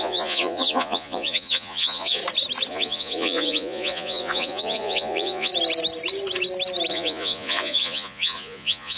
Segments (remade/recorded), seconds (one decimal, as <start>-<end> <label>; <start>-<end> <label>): 0.0-2.2 remade; 2.2-2.7 recorded; 2.7-5.5 remade; 5.5-6.9 recorded; 6.9-9.0 remade